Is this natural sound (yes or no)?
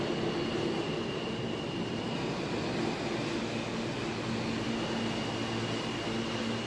yes